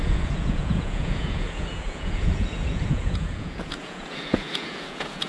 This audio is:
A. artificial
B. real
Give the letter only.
A